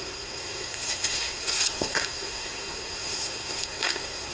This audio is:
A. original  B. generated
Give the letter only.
B